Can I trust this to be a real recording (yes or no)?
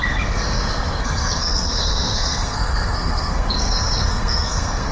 no